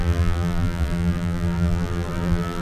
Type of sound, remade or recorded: remade